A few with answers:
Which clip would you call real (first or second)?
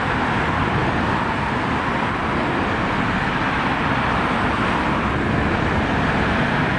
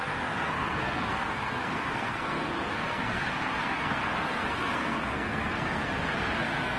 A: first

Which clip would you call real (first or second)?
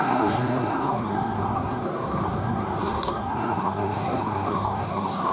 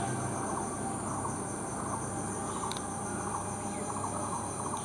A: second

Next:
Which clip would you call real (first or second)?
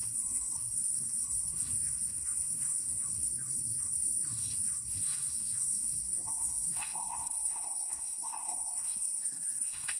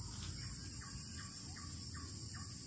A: second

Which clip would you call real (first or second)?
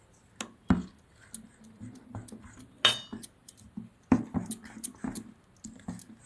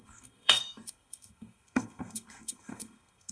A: first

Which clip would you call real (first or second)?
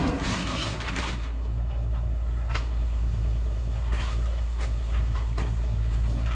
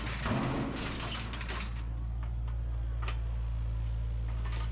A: second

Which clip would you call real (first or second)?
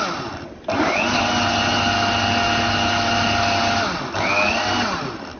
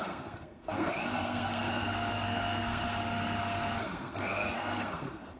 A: first